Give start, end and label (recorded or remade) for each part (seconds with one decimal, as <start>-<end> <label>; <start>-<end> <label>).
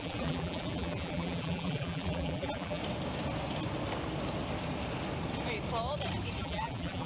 0.0-2.8 remade; 2.8-6.4 recorded; 6.4-7.1 remade